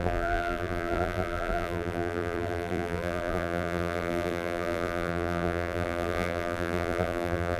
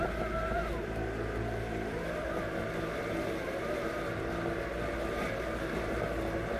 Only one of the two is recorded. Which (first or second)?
second